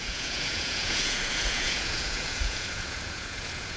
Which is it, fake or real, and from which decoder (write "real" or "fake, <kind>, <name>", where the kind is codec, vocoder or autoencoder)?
fake, vocoder, Vocos